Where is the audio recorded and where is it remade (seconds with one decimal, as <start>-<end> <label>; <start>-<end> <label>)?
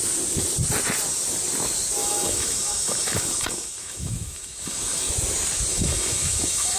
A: 0.0-2.0 recorded; 2.0-5.1 remade; 5.1-5.7 recorded; 5.7-6.8 remade